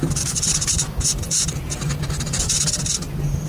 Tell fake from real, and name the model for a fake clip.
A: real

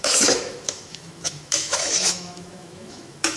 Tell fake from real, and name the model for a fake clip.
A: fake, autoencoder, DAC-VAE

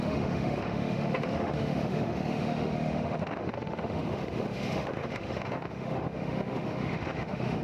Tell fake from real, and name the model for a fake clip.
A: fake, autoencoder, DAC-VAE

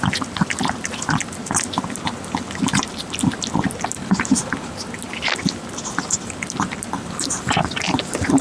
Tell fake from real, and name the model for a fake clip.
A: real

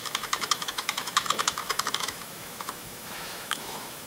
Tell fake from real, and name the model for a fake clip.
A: fake, autoencoder, DAC-VAE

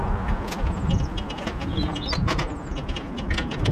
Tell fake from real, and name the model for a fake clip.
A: real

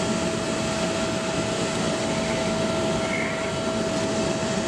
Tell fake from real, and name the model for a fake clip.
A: real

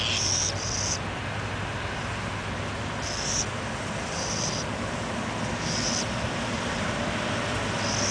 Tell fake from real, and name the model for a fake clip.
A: real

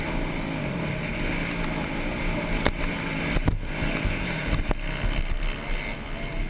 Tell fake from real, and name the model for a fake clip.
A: real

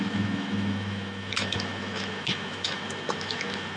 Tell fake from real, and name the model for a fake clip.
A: fake, autoencoder, DAC-VAE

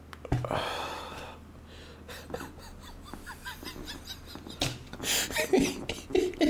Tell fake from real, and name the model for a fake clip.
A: real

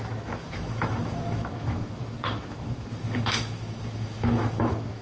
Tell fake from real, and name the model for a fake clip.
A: fake, autoencoder, DAC-VAE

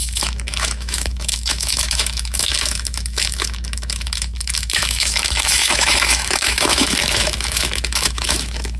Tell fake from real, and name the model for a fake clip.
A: fake, autoencoder, DAC-VAE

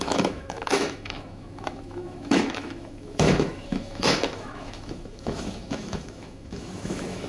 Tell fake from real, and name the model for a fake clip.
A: fake, autoencoder, DAC-VAE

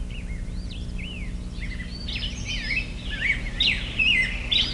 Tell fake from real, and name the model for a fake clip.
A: real